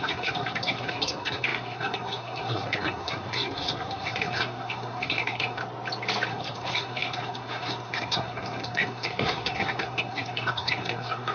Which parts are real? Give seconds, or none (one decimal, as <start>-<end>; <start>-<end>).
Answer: 5.6-6.3